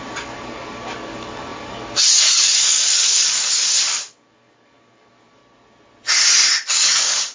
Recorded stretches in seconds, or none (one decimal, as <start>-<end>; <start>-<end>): 5.4-6.7